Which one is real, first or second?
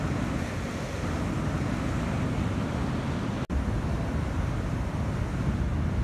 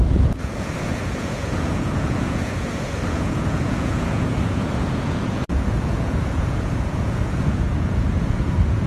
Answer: first